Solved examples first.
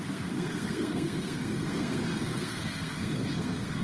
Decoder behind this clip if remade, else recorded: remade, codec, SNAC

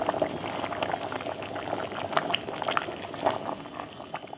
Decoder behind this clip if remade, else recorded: recorded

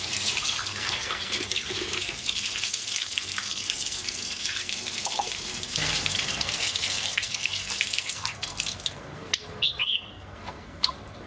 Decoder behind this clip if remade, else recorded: remade, codec, SNAC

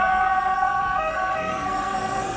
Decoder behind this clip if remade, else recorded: remade, codec, SNAC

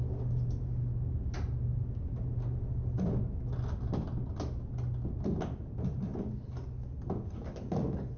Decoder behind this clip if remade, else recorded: recorded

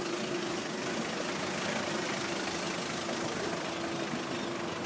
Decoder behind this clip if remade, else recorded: recorded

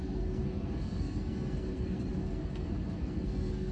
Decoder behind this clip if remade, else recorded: remade, codec, SNAC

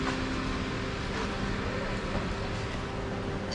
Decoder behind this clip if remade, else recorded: recorded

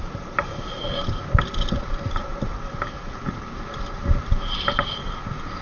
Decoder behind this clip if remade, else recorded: recorded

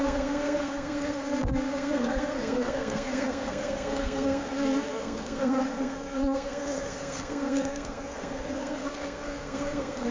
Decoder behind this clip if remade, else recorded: remade, codec, SNAC